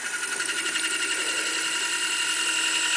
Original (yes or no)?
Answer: yes